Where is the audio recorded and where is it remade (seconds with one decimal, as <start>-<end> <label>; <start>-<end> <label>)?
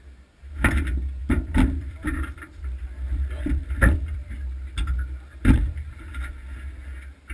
0.0-1.2 recorded; 1.2-4.7 remade; 4.7-7.3 recorded